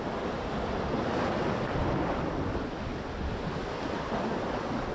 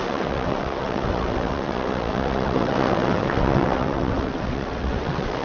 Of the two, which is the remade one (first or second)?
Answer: second